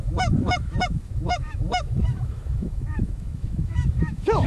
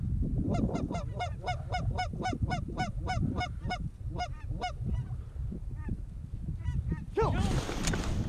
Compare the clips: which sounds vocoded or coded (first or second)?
first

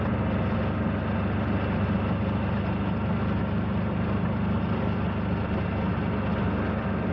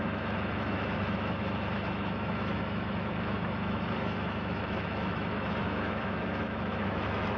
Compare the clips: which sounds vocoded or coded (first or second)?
second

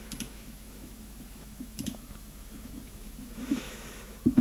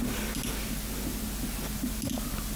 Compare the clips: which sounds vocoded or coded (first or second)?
first